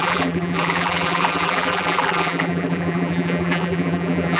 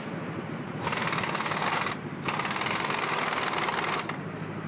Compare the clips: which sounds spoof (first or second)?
first